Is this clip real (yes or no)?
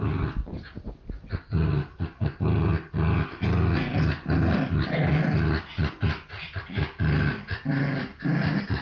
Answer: yes